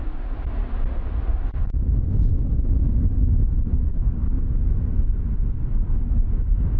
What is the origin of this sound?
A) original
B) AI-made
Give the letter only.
A